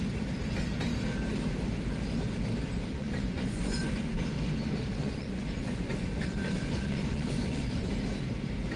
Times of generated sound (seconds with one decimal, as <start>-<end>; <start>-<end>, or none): 2.9-4.2; 5.0-7.9